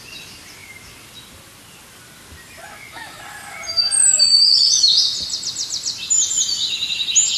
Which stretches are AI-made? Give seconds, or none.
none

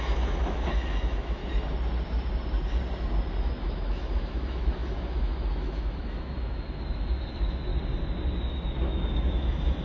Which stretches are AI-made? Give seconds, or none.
0.0-1.4; 3.4-7.7; 8.8-9.8

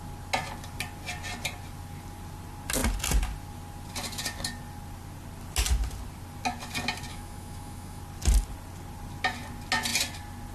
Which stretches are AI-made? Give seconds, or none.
7.1-8.0

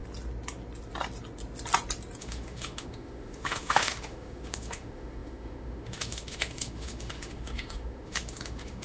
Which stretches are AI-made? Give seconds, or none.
2.2-8.8